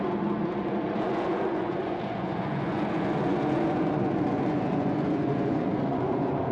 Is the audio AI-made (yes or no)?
yes